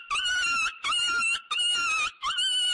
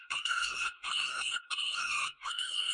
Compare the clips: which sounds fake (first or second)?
second